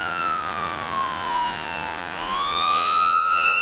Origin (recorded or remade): remade